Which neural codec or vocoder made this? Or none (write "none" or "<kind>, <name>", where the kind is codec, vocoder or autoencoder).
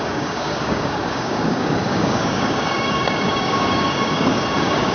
codec, DAC